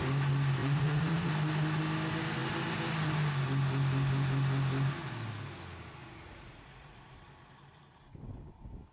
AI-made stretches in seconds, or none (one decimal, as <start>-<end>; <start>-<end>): 0.6-1.3; 6.0-7.1